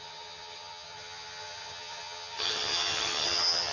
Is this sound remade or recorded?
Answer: remade